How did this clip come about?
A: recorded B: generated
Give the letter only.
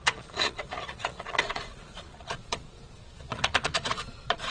B